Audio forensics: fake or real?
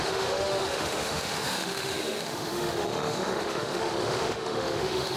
fake